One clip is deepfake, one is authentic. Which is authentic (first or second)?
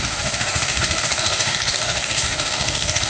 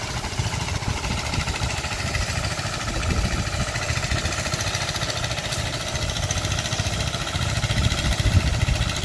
second